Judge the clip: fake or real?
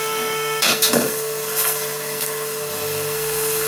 fake